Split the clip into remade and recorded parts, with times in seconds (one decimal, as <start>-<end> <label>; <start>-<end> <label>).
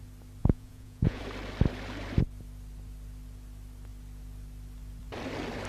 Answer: 0.0-0.4 recorded; 0.4-1.2 remade; 1.2-5.7 recorded